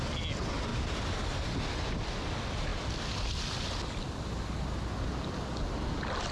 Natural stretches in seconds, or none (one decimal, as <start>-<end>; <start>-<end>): 0.0-6.3